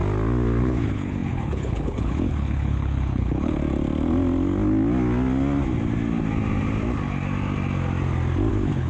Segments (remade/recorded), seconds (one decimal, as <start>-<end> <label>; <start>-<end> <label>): 0.0-0.6 recorded; 0.6-3.6 remade; 3.6-8.5 recorded; 8.5-8.9 remade